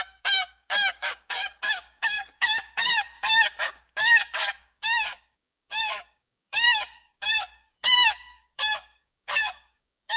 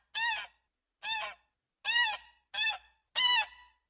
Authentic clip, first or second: second